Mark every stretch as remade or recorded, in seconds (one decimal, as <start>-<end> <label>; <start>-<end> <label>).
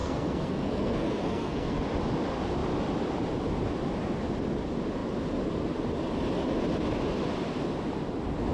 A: 0.0-1.8 remade; 1.8-8.5 recorded